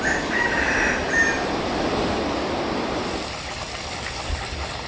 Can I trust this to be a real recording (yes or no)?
yes